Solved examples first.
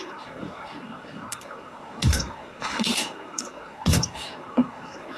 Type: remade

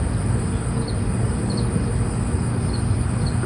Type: recorded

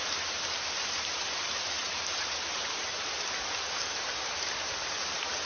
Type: remade